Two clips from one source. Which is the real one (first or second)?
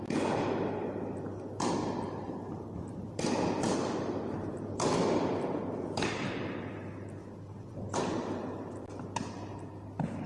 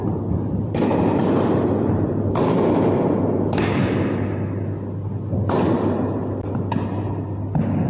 second